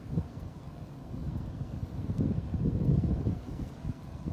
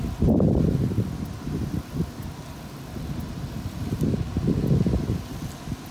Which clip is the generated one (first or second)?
first